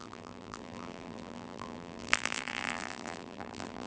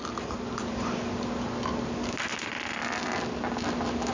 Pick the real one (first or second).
second